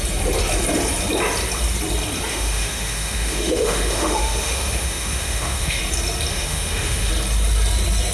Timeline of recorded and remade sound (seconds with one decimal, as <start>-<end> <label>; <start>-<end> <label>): 0.0-2.3 recorded; 2.3-5.8 remade; 5.8-6.3 recorded; 6.3-7.1 remade; 7.1-8.1 recorded